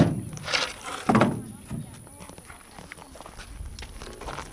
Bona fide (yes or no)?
yes